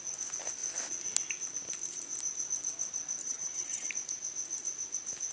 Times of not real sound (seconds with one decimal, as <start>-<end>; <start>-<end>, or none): 3.2-3.9